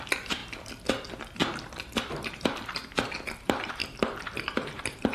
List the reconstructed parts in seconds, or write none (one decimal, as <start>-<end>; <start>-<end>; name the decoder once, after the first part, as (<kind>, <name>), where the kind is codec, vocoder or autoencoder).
0.0-0.4 (vocoder, BigVGAN v2); 2.1-2.8; 3.4-3.8; 4.4-5.1